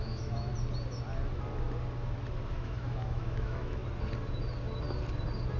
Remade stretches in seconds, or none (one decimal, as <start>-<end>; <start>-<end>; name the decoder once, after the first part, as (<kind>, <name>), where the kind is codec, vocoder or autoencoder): 0.0-0.5 (autoencoder, DAC-VAE); 2.5-3.8